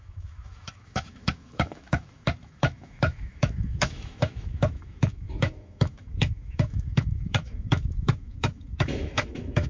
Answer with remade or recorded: remade